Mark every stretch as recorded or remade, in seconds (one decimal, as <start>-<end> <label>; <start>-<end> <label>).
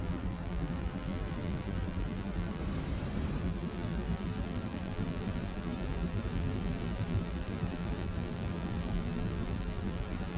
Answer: 0.0-2.6 remade; 2.6-3.4 recorded; 3.4-10.4 remade